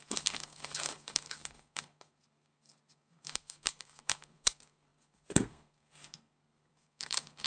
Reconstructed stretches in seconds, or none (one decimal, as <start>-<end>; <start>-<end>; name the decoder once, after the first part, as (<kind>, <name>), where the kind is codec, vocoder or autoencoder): 0.0-7.5 (codec, SNAC)